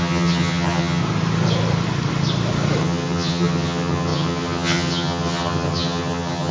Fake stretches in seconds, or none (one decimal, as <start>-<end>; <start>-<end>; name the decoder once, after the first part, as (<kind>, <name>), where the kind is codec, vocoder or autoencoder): 0.0-1.0 (vocoder, HiFi-GAN); 2.8-6.5